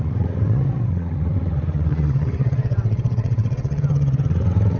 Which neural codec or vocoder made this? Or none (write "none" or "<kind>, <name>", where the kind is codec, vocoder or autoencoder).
vocoder, WaveNeXt